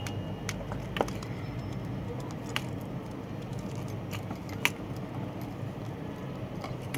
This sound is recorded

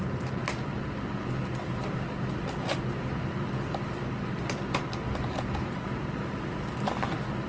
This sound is recorded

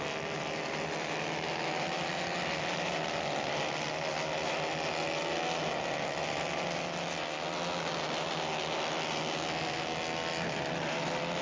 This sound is recorded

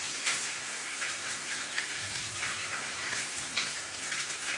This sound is remade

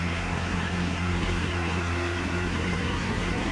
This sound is remade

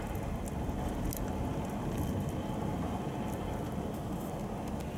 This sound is recorded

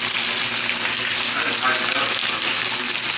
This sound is recorded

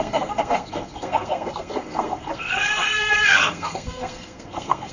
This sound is remade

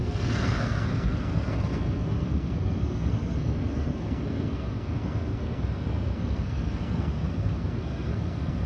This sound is remade